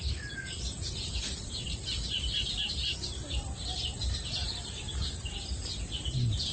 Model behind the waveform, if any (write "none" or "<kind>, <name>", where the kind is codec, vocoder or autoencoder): vocoder, BigVGAN v2